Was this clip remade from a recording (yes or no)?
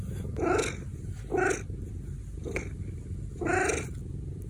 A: no